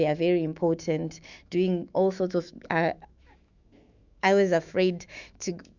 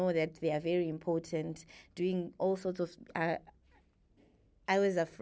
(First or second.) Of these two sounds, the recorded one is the second